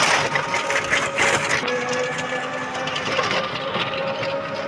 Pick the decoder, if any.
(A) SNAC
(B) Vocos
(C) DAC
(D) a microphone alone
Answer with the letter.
D